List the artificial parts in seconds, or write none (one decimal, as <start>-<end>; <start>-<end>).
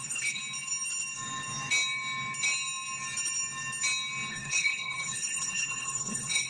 0.0-0.4; 4.3-6.5